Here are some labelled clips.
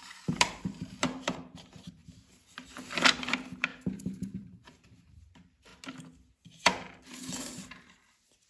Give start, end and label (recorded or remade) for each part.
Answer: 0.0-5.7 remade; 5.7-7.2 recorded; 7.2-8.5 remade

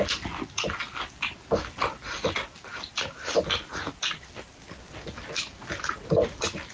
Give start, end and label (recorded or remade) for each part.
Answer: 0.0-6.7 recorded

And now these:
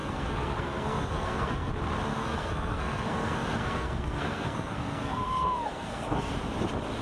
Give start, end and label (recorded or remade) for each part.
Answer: 0.0-1.7 remade; 1.7-2.1 recorded; 2.1-6.3 remade; 6.3-7.0 recorded

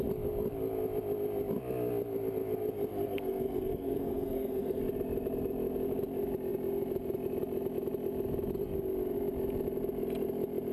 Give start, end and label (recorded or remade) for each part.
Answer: 0.0-2.9 recorded; 2.9-4.8 remade; 4.8-10.7 recorded

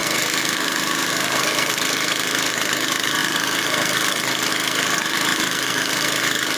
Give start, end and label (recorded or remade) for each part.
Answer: 0.0-6.6 remade